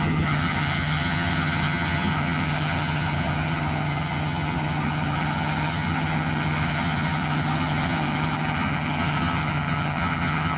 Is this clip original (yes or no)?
no